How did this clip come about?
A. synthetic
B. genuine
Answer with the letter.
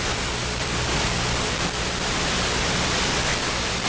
B